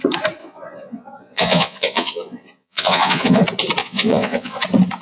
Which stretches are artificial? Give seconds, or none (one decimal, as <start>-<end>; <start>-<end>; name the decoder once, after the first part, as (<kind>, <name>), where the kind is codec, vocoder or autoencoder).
0.4-3.4 (vocoder, Vocos); 3.8-4.6